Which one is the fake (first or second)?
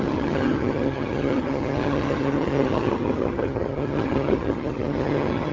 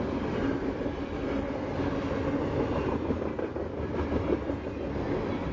first